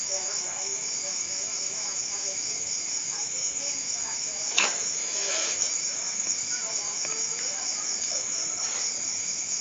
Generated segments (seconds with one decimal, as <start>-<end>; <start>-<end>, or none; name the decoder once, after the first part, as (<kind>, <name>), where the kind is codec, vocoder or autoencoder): 0.0-8.4 (autoencoder, DAC-VAE); 9.2-9.6